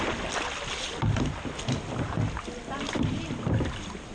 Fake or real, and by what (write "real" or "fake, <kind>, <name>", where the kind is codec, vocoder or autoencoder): real